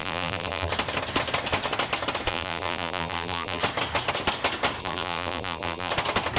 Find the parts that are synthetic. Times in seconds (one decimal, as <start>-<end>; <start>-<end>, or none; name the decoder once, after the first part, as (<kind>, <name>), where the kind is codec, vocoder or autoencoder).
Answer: 0.0-0.7 (vocoder, BigVGAN v2); 2.3-3.6; 4.8-5.9